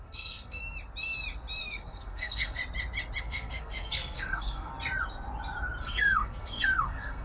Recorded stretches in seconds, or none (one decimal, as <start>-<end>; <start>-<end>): 0.6-1.6; 2.6-3.2; 4.7-5.8